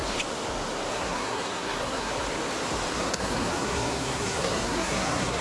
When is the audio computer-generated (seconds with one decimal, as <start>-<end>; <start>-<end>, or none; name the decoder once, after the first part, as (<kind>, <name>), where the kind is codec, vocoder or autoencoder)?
0.9-2.1 (codec, SNAC); 2.9-5.4